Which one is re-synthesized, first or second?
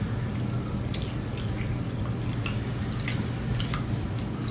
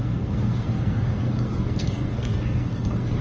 second